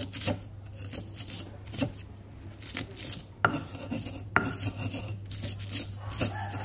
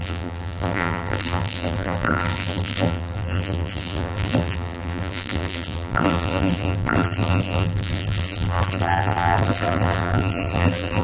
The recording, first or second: first